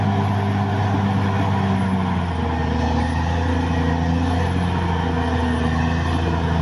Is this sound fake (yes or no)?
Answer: no